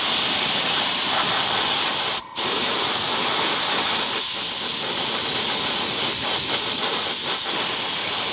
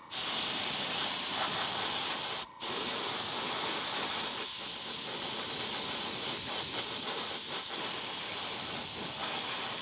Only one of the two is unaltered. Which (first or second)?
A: second